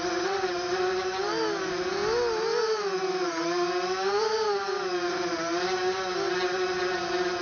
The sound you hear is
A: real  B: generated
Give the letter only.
A